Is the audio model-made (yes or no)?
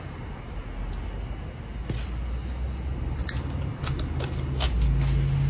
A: no